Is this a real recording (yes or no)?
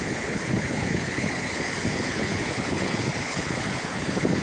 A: no